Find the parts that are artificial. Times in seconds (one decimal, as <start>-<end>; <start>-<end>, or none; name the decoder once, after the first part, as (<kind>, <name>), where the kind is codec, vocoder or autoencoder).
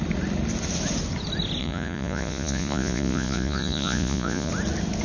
1.6-4.5 (vocoder, Vocos)